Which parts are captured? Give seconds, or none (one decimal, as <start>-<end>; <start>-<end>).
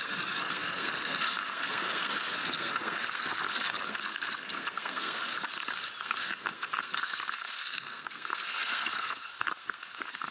5.3-6.0